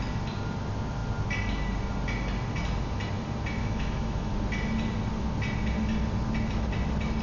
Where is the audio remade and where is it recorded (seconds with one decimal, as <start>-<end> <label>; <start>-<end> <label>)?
0.0-3.6 recorded; 3.6-4.3 remade; 4.3-7.2 recorded